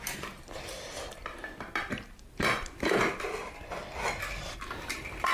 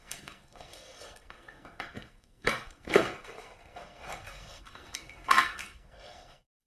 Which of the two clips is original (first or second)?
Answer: first